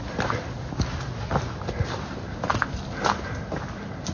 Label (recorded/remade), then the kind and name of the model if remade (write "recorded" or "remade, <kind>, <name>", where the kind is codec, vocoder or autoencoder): recorded